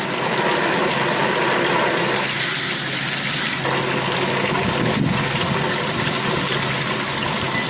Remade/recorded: recorded